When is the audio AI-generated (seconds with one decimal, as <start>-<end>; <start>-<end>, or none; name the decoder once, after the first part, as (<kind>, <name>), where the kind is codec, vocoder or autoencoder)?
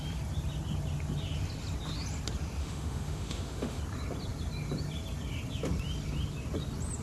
2.6-3.8 (autoencoder, DAC-VAE)